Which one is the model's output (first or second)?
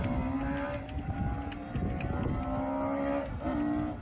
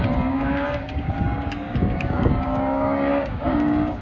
second